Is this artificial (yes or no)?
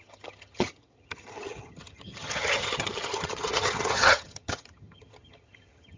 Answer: yes